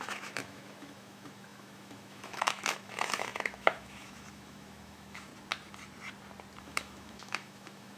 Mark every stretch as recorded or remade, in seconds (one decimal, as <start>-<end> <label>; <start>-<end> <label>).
0.0-5.3 remade; 5.3-6.6 recorded; 6.6-8.0 remade